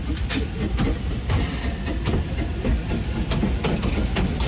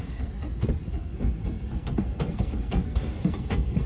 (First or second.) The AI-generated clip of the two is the second